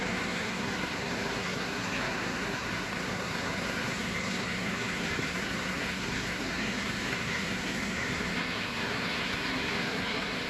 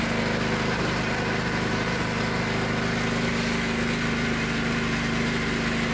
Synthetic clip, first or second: first